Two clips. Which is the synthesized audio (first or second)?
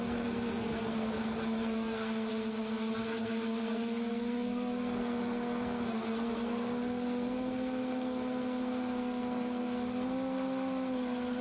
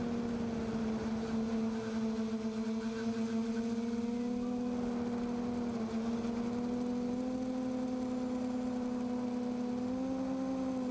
first